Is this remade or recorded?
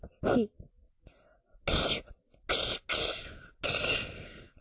recorded